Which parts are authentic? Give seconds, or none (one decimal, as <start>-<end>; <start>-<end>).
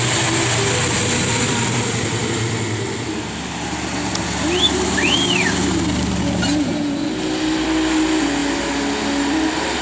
0.0-9.8